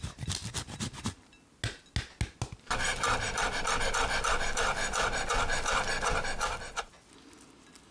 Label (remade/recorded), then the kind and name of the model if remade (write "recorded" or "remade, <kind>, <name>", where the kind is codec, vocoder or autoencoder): recorded